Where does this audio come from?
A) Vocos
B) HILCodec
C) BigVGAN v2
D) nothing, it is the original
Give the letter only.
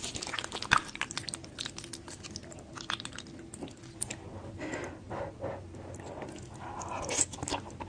D